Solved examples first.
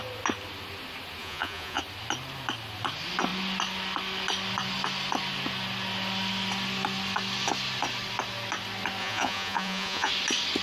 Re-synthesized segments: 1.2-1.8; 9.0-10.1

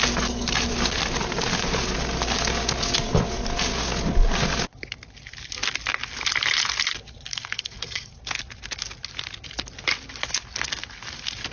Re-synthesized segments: 7.3-8.1

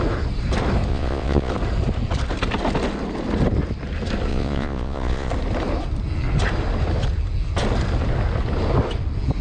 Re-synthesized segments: 0.9-1.5; 4.3-5.3